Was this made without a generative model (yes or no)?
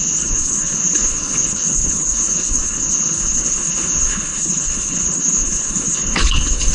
no